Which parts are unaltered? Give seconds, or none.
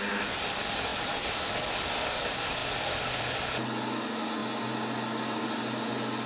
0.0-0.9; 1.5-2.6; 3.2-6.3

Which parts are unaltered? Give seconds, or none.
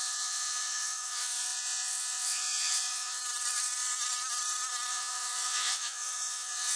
3.2-4.9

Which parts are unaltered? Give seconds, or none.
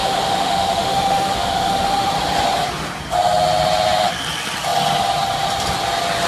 2.1-6.3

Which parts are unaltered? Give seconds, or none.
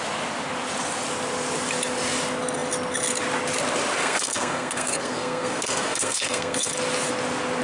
0.0-4.0; 6.7-7.6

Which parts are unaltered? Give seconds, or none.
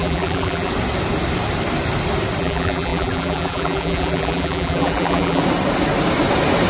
0.7-2.4; 5.4-6.7